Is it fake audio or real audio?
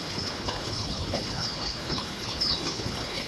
fake